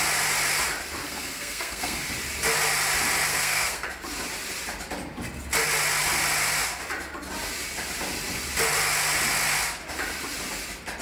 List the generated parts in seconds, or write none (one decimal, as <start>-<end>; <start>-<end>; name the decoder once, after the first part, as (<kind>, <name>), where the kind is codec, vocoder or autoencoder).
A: 1.0-2.1 (codec, SNAC); 3.3-3.9